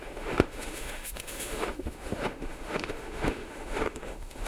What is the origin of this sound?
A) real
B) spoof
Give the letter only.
B